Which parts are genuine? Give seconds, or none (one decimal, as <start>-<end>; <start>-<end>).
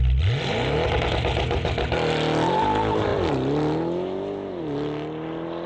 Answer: 0.0-5.7